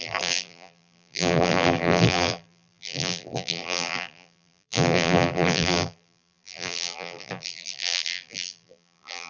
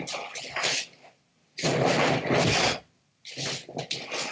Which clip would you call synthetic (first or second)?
first